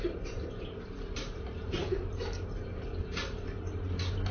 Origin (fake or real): fake